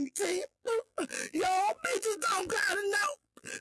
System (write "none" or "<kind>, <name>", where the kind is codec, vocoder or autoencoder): vocoder, BigVGAN v2